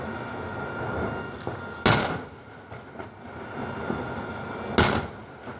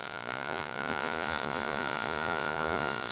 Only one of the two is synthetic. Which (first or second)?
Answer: second